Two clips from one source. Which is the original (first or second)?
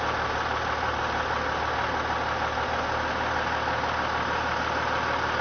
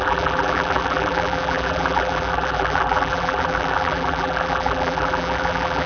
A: first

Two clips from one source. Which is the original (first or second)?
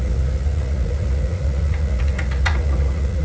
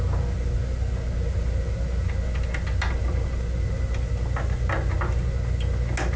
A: second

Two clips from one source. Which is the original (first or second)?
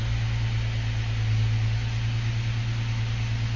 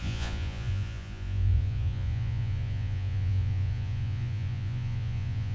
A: first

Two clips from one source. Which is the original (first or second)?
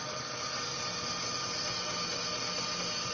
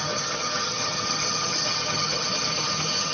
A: first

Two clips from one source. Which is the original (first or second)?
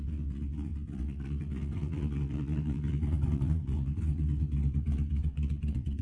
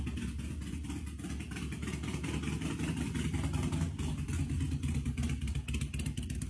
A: second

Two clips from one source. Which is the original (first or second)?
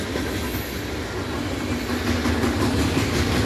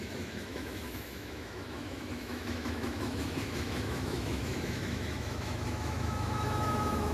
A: first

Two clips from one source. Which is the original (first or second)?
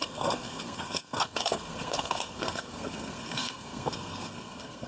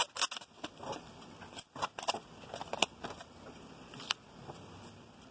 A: second